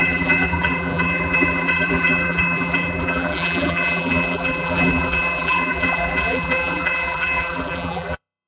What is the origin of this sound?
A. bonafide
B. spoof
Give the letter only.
B